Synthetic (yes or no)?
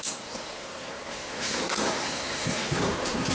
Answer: yes